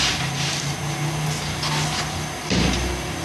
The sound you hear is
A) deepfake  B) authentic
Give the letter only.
B